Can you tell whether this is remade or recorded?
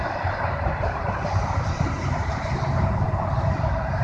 remade